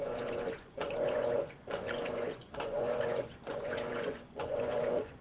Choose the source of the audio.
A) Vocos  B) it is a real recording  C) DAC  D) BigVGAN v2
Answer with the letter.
A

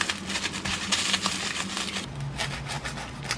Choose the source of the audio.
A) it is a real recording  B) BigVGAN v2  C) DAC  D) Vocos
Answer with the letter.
A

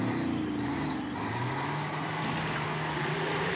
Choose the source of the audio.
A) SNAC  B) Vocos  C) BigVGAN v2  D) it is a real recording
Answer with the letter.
D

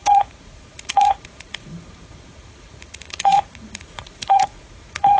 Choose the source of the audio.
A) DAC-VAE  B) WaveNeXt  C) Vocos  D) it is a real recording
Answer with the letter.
C